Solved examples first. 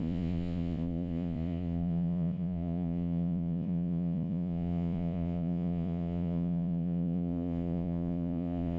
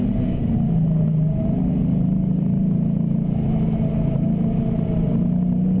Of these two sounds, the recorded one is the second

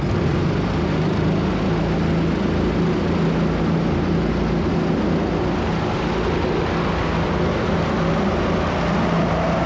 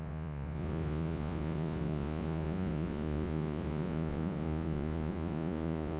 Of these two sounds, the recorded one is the first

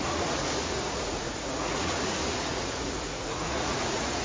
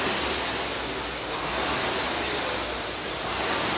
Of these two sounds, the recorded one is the second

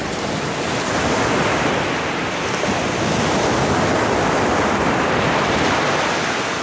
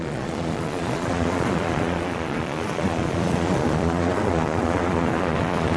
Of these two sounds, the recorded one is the first